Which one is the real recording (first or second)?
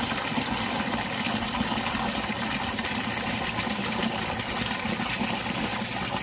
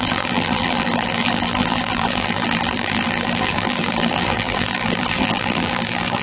first